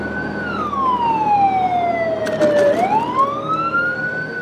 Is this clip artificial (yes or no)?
no